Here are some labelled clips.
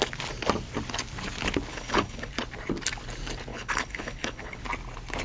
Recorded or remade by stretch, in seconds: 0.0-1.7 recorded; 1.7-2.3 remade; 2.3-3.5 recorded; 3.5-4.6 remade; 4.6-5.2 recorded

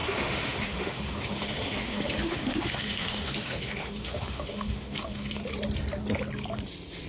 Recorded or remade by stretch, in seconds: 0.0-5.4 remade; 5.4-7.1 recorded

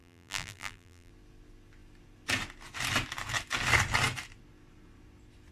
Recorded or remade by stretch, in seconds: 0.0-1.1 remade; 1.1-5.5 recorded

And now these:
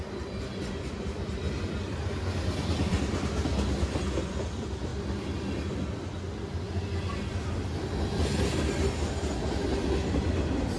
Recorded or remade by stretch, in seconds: 0.0-10.8 recorded

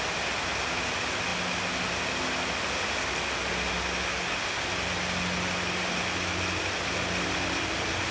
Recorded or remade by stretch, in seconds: 0.0-8.1 recorded

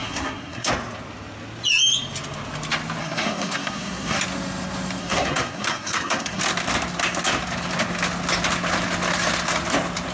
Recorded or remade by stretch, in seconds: 0.0-0.7 remade; 0.7-3.0 recorded; 3.0-4.2 remade; 4.2-5.0 recorded; 5.0-6.4 remade; 6.4-10.1 recorded

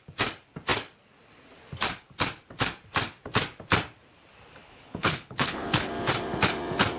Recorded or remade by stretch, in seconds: 0.0-4.6 recorded; 4.6-5.9 remade; 5.9-7.0 recorded